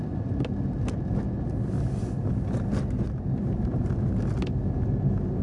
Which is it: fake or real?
real